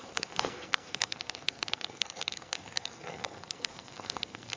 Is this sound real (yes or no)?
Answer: no